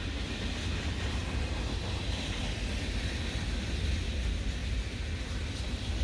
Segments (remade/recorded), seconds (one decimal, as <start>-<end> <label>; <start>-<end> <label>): 0.0-1.2 recorded; 1.2-2.4 remade; 2.4-4.6 recorded; 4.6-5.3 remade; 5.3-6.0 recorded